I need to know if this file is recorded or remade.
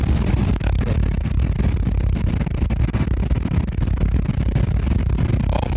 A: recorded